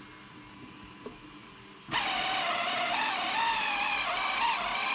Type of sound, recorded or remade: recorded